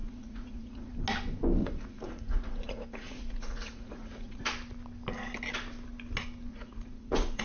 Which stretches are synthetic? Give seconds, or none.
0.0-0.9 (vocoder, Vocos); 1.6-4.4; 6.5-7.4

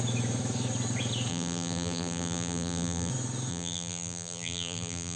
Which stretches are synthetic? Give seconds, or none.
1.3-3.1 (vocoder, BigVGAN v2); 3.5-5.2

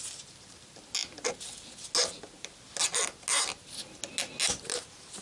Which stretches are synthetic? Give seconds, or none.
none

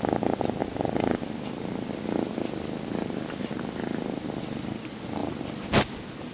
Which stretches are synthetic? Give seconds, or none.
5.2-5.7 (vocoder, BigVGAN v2)

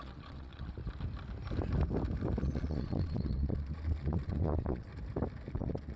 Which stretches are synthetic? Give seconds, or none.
0.0-0.8 (vocoder, Vocos); 2.4-4.9; 5.5-6.0